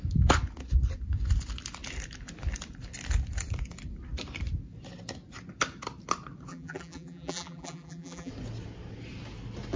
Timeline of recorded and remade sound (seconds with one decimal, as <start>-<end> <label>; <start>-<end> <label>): 0.0-6.5 recorded; 6.5-8.3 remade; 8.3-9.8 recorded